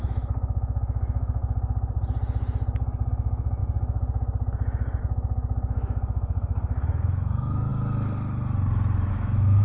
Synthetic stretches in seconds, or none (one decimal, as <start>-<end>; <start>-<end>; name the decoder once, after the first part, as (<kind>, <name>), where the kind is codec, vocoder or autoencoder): 0.0-1.4 (autoencoder, DAC-VAE); 3.1-3.6; 5.0-7.7; 9.1-9.6